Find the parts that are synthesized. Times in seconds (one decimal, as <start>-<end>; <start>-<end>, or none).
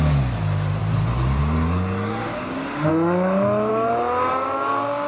2.2-2.9; 3.7-5.1